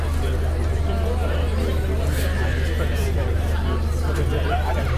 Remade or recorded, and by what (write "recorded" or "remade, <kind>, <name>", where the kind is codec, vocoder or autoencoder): recorded